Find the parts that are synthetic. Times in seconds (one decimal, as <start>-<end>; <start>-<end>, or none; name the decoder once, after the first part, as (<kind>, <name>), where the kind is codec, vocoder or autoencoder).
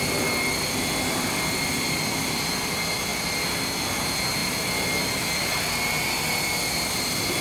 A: none